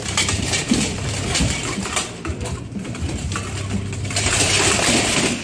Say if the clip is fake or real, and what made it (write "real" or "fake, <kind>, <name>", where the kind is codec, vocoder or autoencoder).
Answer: fake, vocoder, BigVGAN v2